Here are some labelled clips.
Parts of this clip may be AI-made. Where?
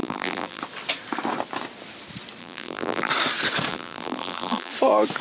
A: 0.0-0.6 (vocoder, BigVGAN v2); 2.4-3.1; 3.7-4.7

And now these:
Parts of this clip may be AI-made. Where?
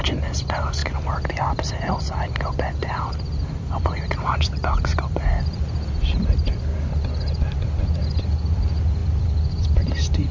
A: 2.8-4.5 (vocoder, BigVGAN v2); 4.9-6.6; 9.0-10.3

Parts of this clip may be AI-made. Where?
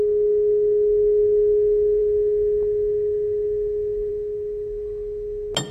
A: none